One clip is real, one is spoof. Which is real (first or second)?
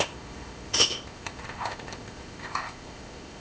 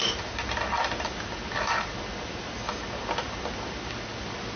second